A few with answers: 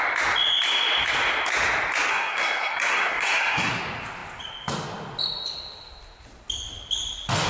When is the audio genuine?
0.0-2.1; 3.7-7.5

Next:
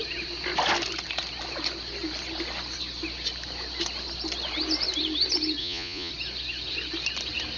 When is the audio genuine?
0.0-5.6; 6.1-7.6

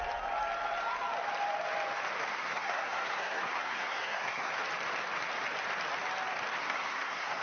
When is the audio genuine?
0.0-2.3; 4.5-6.6

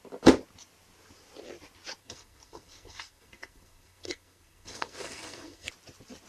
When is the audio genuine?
0.0-2.0; 5.7-6.3

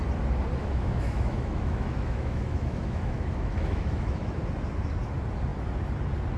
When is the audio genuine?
0.0-0.6; 4.4-6.4

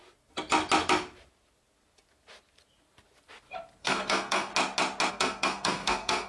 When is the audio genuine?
0.0-3.8; 4.5-5.1